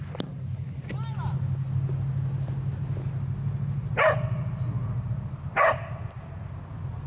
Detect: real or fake real